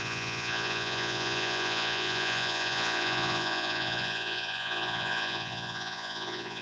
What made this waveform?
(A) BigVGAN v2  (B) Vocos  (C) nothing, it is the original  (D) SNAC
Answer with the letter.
B